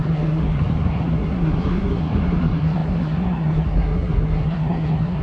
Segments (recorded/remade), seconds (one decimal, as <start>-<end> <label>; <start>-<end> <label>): 0.0-5.2 remade